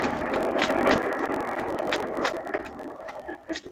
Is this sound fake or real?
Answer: real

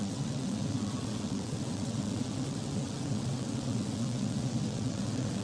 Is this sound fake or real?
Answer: fake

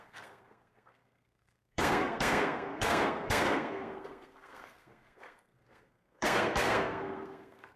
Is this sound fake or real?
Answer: fake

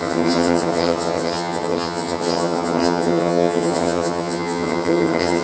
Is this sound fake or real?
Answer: fake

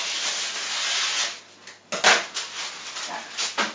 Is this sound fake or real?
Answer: real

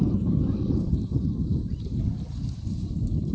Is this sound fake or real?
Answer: fake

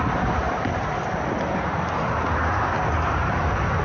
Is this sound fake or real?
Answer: real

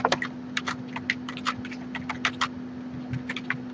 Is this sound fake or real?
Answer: real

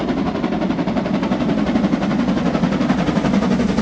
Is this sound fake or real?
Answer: real